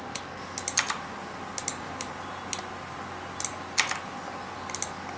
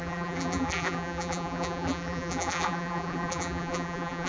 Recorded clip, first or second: first